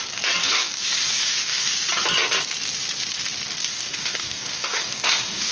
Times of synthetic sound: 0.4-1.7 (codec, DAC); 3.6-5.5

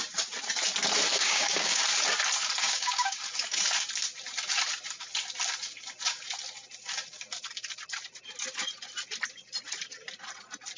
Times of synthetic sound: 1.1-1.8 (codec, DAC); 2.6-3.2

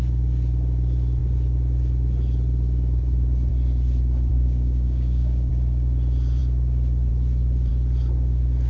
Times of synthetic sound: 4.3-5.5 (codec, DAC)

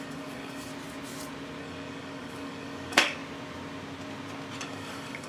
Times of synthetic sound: 0.0-0.7 (codec, DAC); 1.6-3.2; 4.6-5.3

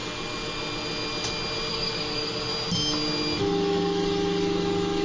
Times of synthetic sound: 1.7-2.5 (codec, DAC); 3.4-5.0